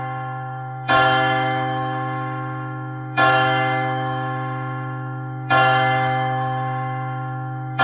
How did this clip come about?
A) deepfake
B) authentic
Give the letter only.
A